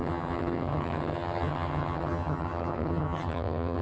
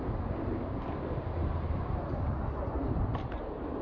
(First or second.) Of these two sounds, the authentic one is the second